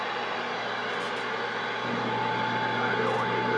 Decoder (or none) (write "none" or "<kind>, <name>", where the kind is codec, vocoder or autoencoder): none